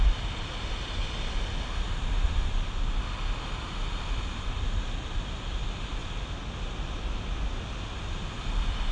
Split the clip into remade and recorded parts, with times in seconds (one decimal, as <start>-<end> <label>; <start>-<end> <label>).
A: 0.0-8.9 recorded